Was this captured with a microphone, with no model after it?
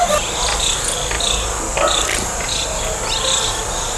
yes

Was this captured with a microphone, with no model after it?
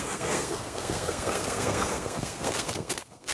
no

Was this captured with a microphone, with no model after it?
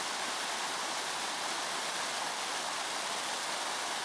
yes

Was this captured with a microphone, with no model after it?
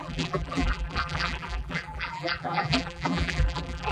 no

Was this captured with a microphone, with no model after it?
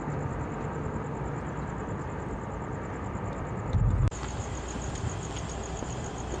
yes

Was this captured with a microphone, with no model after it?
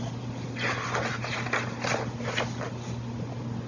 yes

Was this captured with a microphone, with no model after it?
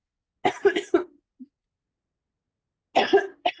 yes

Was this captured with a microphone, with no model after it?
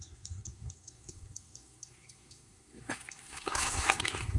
no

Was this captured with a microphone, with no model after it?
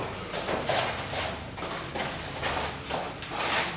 yes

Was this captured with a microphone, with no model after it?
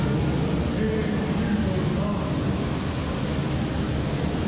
yes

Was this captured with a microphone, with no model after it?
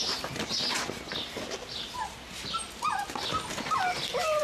yes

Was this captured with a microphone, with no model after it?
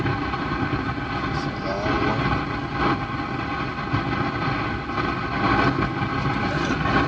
yes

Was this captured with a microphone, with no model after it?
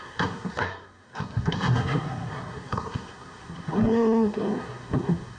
no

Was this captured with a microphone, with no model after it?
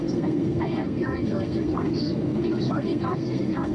no